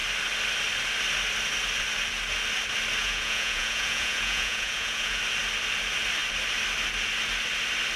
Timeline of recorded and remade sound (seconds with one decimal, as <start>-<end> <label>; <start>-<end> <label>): 0.0-3.0 recorded; 3.0-5.2 remade; 5.2-8.0 recorded